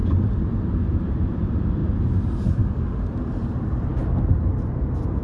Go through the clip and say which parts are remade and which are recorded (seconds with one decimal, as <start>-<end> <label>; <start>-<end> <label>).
0.0-0.8 recorded; 0.8-1.8 remade; 1.8-3.2 recorded; 3.2-5.2 remade